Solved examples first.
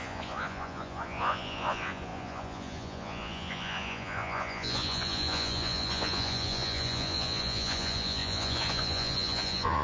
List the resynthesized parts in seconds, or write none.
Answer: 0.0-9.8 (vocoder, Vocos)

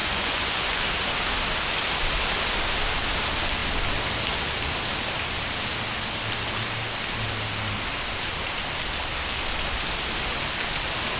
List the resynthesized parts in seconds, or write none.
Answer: 0.0-0.8 (vocoder, Vocos)